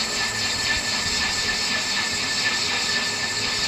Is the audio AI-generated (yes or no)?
no